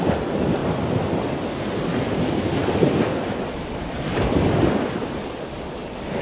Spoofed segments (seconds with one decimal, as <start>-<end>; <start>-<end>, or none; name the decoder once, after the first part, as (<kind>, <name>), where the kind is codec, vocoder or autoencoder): none